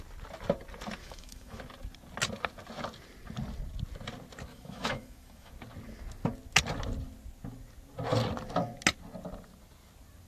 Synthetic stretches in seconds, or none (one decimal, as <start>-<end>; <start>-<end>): 1.0-1.6; 4.5-5.5